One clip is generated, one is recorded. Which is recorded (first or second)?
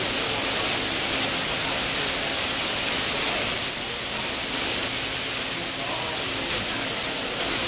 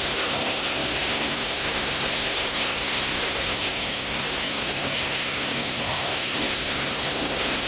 first